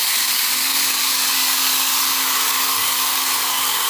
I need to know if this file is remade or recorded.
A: remade